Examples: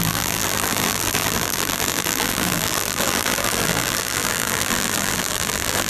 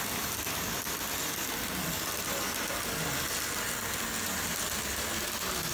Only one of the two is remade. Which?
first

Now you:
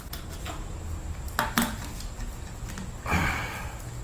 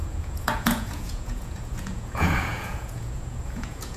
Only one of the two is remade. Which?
second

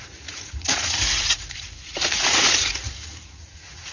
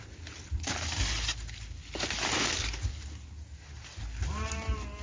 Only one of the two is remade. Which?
first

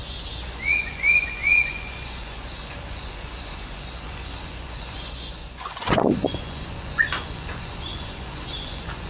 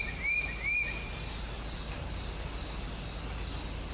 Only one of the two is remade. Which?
first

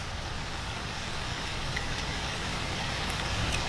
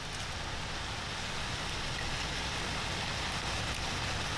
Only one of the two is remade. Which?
first